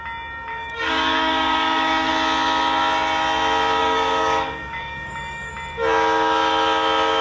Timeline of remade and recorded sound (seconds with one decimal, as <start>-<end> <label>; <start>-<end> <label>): 0.0-0.5 recorded; 0.5-2.1 remade; 2.1-3.8 recorded; 3.8-5.5 remade; 5.5-7.2 recorded